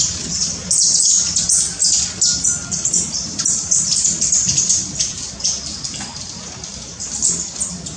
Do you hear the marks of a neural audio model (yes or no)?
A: no